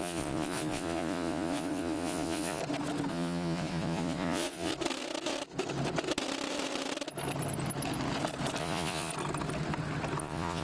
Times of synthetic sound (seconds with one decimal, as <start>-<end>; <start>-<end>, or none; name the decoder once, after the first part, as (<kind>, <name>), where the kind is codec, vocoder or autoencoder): 0.0-2.6 (vocoder, Vocos); 3.1-4.7; 8.6-9.1; 10.2-10.6